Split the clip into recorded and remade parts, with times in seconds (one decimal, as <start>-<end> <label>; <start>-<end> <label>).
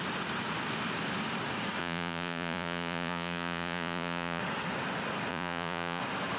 0.0-1.8 recorded; 1.8-4.4 remade; 4.4-5.3 recorded; 5.3-6.0 remade; 6.0-6.4 recorded